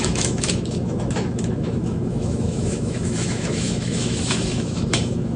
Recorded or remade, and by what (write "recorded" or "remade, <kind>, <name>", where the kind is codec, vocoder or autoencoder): remade, autoencoder, DAC-VAE